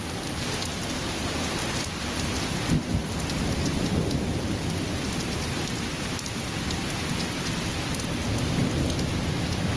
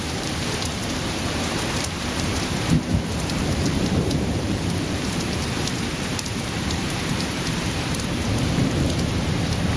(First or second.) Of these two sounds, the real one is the first